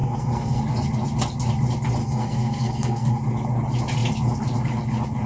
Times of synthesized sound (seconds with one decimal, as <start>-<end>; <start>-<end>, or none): 0.0-0.6; 2.0-3.2